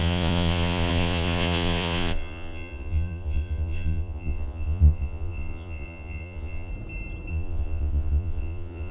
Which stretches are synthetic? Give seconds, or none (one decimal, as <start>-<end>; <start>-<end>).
0.0-6.7; 7.3-8.9